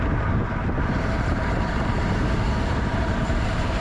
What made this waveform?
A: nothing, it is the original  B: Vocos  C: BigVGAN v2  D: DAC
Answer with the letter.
C